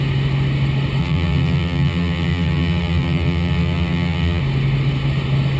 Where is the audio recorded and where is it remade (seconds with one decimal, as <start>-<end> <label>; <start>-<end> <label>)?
0.0-1.0 recorded; 1.0-4.4 remade; 4.4-5.6 recorded